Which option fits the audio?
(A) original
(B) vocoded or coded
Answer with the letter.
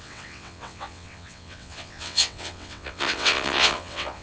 B